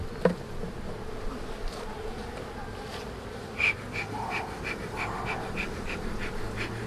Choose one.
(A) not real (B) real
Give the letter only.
B